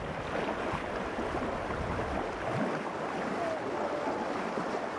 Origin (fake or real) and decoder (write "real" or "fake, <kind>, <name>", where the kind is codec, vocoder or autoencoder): real